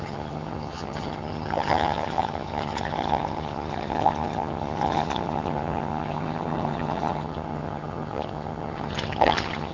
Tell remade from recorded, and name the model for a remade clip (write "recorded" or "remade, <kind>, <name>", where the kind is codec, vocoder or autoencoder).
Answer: remade, vocoder, HiFi-GAN